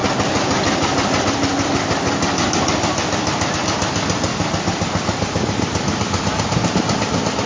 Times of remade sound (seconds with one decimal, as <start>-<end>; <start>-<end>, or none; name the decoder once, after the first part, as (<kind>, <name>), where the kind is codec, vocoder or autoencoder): none